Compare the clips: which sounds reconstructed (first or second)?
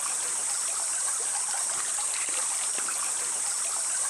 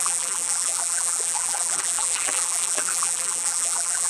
second